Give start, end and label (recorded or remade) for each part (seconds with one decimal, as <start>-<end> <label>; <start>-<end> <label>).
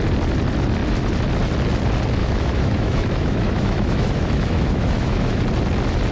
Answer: 0.0-2.2 recorded; 2.2-5.4 remade; 5.4-6.1 recorded